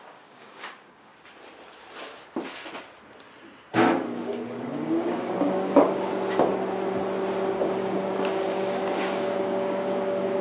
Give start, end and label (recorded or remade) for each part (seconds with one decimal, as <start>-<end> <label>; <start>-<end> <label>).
0.0-1.1 remade; 1.1-4.0 recorded; 4.0-6.1 remade; 6.1-7.5 recorded; 7.5-10.4 remade